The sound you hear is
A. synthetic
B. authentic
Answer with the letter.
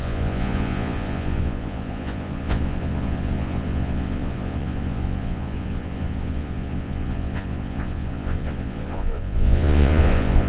A